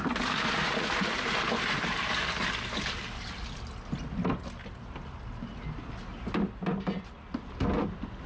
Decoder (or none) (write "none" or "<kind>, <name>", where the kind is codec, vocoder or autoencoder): none